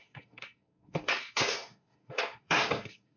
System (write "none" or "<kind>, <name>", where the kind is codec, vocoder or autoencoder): codec, SNAC